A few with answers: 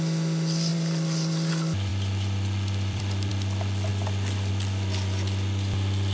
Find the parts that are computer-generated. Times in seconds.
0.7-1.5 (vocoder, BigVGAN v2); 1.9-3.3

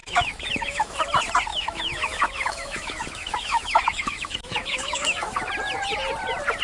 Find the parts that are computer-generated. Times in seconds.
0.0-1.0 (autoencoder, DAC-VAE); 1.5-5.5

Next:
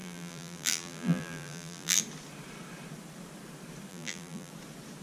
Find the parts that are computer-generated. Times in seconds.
0.0-2.0 (vocoder, BigVGAN v2); 3.9-4.5

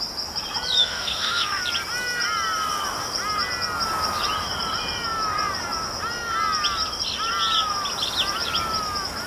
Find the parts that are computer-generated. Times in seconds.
0.8-1.6 (autoencoder, DAC-VAE)

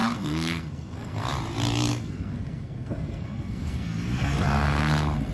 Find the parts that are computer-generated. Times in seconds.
0.0-1.3 (codec, SNAC); 1.9-5.3

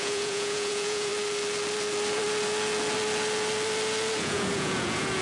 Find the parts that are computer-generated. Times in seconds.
0.0-1.1 (vocoder, Vocos); 4.2-5.2

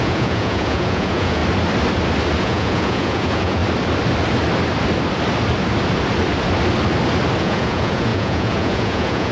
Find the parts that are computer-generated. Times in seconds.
0.0-1.4 (vocoder, Vocos); 2.4-3.6; 7.4-9.3

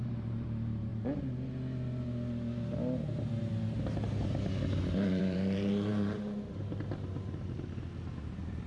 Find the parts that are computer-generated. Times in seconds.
0.0-0.9 (vocoder, BigVGAN v2); 5.2-8.7